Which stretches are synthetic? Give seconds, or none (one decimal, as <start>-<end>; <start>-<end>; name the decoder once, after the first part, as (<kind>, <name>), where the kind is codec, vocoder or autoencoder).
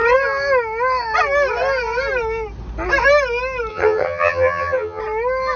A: 3.7-5.0 (vocoder, HiFi-GAN)